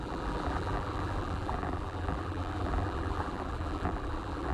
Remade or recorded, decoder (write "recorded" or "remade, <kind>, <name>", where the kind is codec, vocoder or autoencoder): remade, vocoder, BigVGAN v2